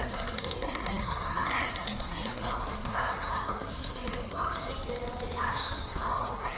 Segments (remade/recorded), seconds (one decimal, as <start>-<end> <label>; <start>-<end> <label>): 0.0-4.7 remade; 4.7-5.5 recorded; 5.5-6.6 remade